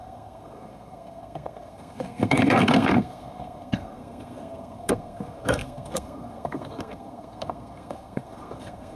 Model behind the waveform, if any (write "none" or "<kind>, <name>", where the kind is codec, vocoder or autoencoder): codec, SNAC